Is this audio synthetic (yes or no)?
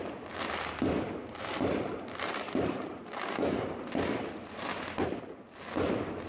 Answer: no